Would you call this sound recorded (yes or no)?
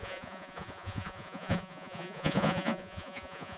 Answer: no